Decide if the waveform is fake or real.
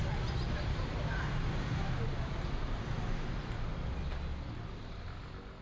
real